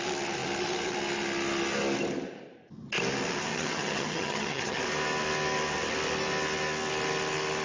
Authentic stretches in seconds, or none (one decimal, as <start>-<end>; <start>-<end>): 0.0-3.5; 4.8-7.6